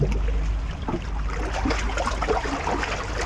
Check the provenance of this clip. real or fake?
real